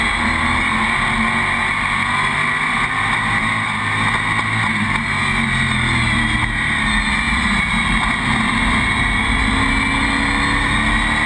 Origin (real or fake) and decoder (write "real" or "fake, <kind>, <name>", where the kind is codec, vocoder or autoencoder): real